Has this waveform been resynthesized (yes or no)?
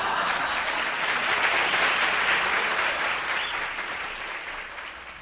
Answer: no